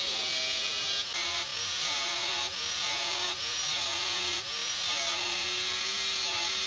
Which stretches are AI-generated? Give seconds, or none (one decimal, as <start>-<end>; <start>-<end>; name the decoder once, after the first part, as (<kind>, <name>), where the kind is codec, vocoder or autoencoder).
none